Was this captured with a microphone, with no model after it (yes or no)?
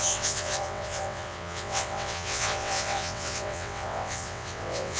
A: no